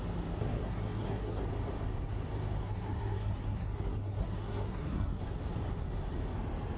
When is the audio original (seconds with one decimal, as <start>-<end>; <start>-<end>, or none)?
0.0-0.4; 1.4-2.6; 5.2-6.8